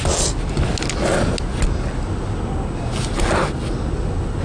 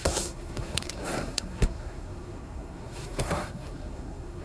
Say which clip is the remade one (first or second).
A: second